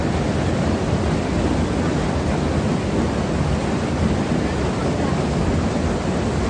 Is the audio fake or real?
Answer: real